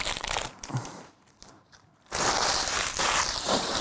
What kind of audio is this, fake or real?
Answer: fake